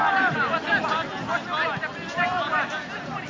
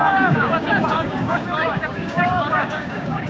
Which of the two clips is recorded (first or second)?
first